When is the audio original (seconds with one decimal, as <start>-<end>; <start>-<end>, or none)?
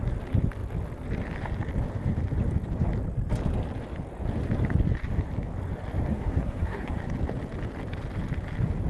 0.0-6.1; 7.0-8.9